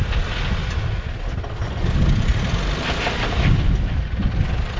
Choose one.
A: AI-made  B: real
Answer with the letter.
B